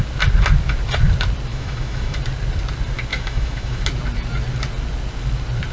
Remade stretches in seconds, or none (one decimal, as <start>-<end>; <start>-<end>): 1.5-2.2; 3.1-3.8